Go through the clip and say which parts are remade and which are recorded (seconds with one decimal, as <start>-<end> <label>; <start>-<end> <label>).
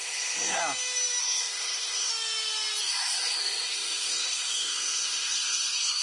0.0-0.6 remade; 0.6-1.2 recorded; 1.2-2.1 remade; 2.1-2.8 recorded; 2.8-6.0 remade